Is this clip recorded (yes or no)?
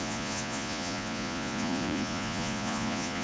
no